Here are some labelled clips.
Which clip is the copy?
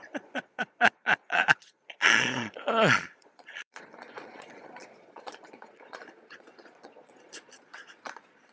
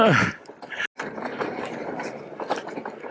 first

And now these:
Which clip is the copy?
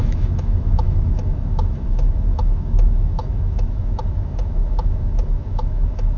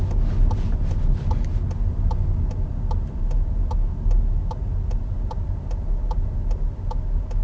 first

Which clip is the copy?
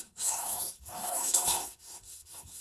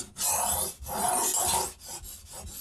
first